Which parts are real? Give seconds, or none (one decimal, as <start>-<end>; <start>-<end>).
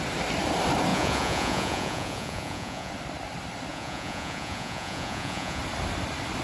0.0-0.9; 2.9-3.7; 5.6-6.4